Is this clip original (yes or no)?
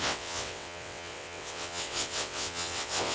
no